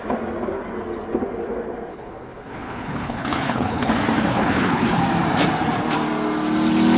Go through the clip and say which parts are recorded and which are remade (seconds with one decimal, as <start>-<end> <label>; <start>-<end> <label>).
0.0-1.9 recorded; 1.9-3.9 remade; 3.9-4.3 recorded; 4.3-5.0 remade; 5.0-7.0 recorded